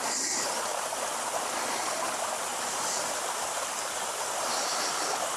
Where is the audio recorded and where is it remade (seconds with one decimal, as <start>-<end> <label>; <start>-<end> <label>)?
0.0-2.5 recorded; 2.5-5.4 remade